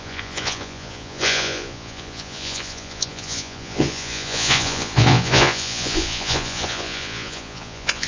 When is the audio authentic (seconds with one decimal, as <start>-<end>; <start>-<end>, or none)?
none